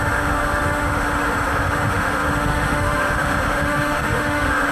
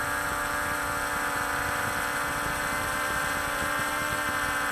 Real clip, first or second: second